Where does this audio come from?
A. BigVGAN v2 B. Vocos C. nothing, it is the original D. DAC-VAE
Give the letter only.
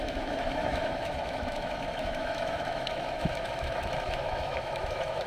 D